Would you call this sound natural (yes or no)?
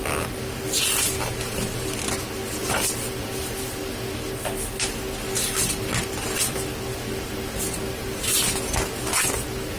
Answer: yes